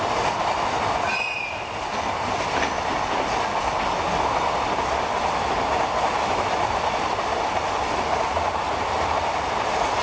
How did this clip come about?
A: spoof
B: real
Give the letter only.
B